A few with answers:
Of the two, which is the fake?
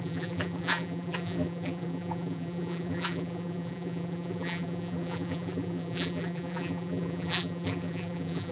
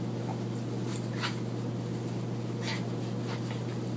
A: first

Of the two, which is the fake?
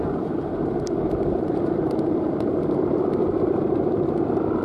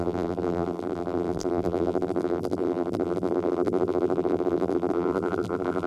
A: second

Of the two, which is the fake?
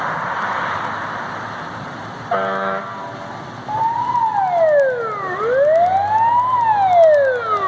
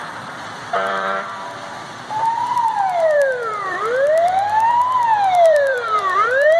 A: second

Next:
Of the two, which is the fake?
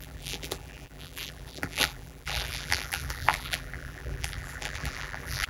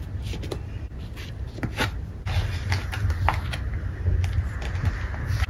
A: first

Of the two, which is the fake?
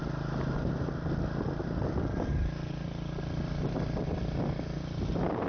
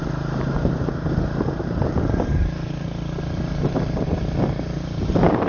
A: second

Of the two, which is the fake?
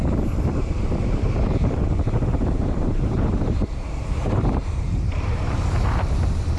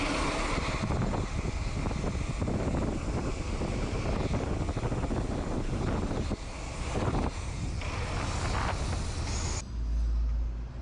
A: first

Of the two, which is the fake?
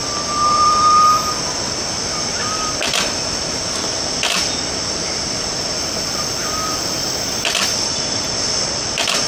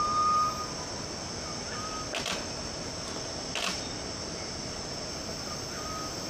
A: first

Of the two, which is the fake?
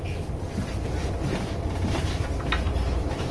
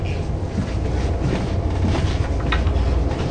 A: first